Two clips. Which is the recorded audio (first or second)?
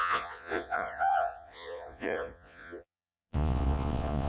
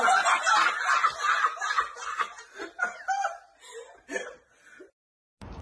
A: second